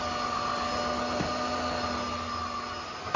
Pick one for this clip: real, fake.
real